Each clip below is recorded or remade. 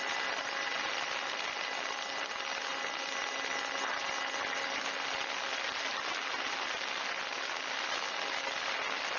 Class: recorded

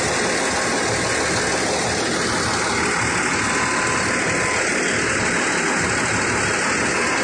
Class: recorded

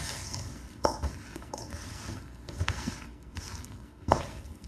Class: remade